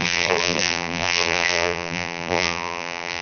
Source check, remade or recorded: remade